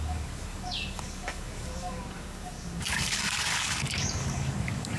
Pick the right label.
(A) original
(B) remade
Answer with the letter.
B